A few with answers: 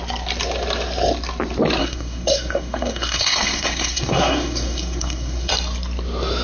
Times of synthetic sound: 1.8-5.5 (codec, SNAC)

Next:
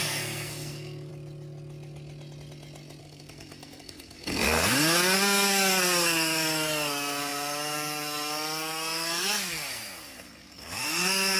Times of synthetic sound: 0.0-1.1 (codec, SNAC); 3.0-11.4

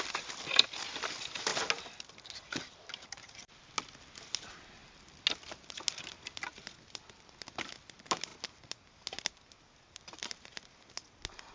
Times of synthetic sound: none

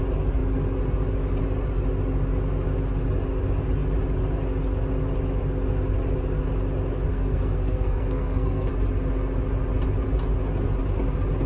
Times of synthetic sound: 7.1-8.7 (codec, SNAC)

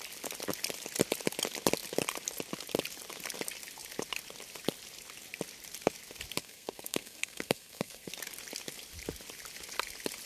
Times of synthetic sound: 6.4-8.1 (codec, SNAC)

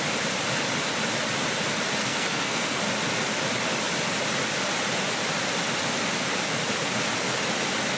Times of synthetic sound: 2.0-2.8 (codec, SNAC)

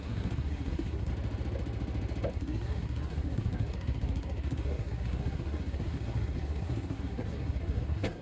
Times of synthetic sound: 0.0-1.1 (codec, SNAC); 2.3-8.2